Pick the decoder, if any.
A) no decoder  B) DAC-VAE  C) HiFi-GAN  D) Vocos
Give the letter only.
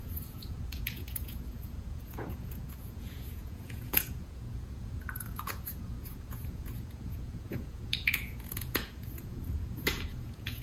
D